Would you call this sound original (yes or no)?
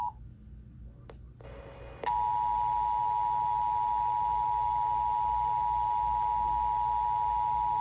yes